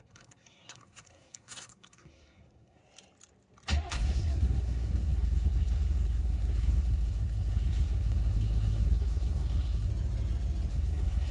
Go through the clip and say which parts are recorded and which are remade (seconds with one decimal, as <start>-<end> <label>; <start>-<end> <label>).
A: 0.0-2.8 remade; 2.8-3.9 recorded; 3.9-9.9 remade; 9.9-10.7 recorded; 10.7-11.3 remade